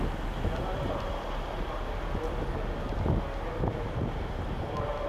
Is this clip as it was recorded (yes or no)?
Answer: yes